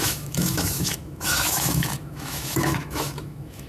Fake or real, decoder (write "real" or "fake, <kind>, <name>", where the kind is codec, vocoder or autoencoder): fake, autoencoder, DAC-VAE